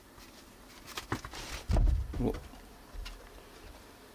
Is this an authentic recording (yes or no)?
no